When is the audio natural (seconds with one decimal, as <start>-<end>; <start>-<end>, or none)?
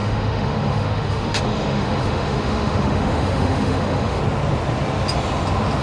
4.2-5.8